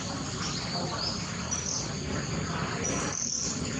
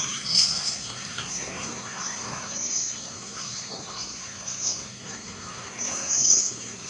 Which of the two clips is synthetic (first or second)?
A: second